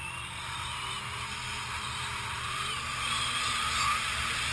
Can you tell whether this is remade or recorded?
recorded